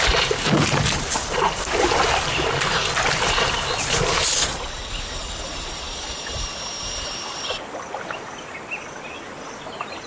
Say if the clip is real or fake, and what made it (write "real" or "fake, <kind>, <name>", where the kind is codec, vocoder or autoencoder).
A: real